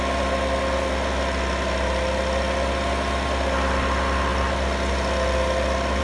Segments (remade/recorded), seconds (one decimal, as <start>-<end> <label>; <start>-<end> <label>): 0.0-6.0 recorded